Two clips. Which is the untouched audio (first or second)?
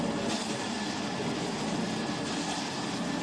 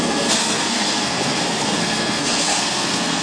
first